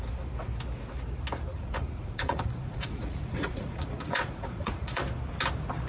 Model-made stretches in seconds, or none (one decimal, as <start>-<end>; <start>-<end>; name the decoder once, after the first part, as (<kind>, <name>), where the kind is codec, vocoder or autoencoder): 1.5-5.0 (vocoder, Vocos)